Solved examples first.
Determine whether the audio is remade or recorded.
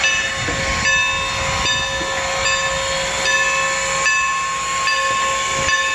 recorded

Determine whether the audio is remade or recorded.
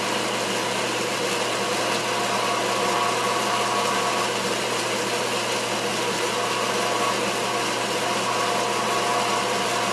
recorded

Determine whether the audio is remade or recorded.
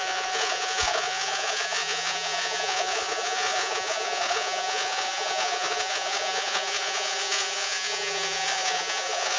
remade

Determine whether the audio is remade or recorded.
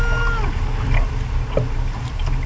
recorded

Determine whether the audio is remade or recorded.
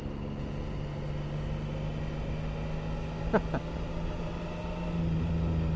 recorded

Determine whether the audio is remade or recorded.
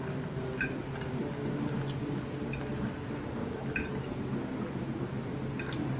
recorded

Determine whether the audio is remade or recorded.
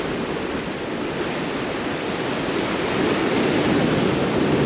recorded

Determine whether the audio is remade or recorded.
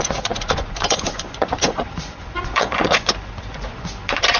remade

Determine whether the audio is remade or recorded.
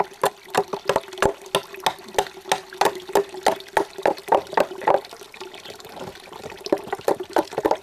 recorded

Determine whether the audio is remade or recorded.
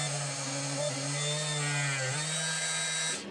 recorded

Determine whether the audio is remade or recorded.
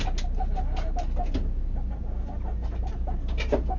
recorded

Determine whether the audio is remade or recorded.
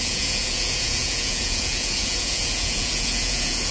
remade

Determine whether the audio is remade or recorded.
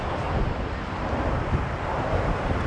recorded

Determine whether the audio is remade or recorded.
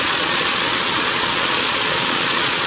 remade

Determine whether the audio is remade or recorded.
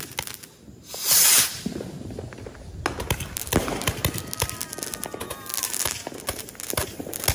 recorded